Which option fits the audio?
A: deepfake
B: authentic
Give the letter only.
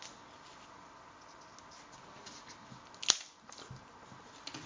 B